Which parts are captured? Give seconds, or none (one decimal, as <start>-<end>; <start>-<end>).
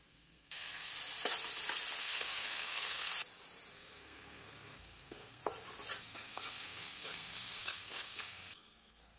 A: 0.9-2.0; 3.1-3.7; 5.4-6.0